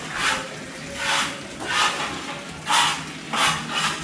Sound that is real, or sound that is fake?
real